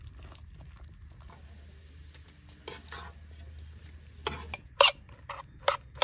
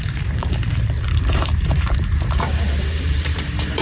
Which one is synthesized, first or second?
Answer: second